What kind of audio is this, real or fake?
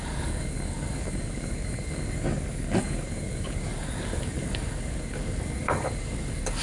fake